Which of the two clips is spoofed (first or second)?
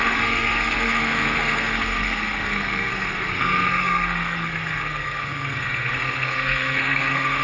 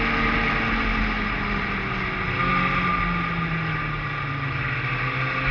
first